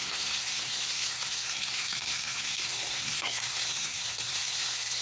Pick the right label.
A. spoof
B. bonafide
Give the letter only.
A